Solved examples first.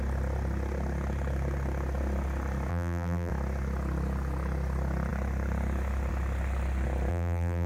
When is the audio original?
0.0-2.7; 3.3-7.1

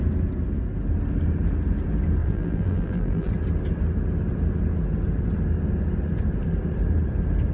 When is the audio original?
0.0-2.2; 3.3-7.5

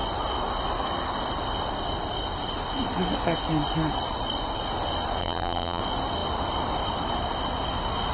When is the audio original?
0.0-5.2; 5.8-8.1